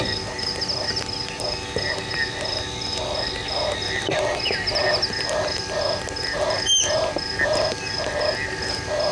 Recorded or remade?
recorded